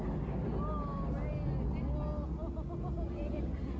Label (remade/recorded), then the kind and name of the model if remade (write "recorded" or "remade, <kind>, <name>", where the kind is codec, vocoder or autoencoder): recorded